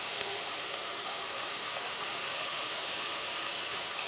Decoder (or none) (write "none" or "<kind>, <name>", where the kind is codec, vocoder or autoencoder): autoencoder, DAC-VAE